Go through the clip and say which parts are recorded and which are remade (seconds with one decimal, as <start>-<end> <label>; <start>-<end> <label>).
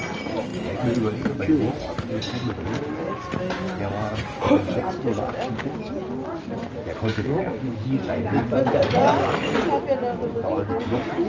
0.0-7.1 recorded; 7.1-7.8 remade; 7.8-11.3 recorded